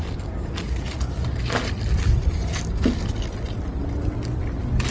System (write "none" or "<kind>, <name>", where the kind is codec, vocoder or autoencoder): none